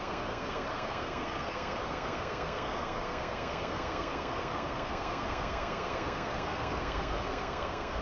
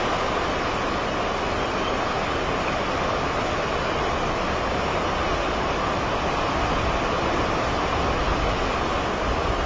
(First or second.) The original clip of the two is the second